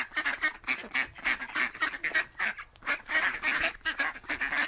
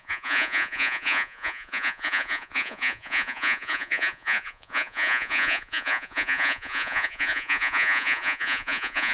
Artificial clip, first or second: second